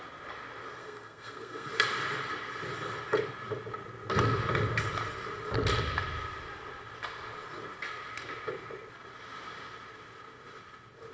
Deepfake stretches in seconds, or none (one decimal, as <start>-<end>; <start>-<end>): 0.8-1.7